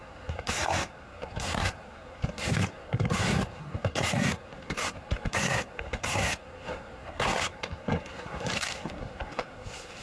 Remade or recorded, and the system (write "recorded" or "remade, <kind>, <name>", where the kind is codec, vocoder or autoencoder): remade, codec, SNAC